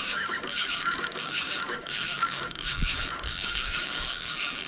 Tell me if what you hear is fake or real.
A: fake